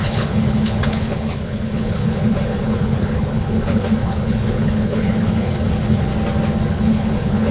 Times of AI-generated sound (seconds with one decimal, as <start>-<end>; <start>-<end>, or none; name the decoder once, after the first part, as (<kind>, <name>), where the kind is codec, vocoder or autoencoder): 0.0-6.1 (codec, HILCodec); 6.7-7.5